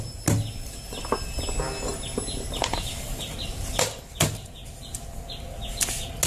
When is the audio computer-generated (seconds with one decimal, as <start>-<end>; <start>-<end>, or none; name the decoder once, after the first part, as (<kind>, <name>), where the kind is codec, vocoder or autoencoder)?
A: none